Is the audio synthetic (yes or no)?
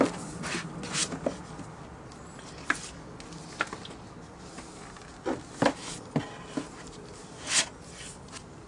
no